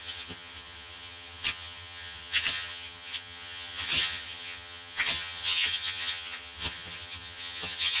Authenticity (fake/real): fake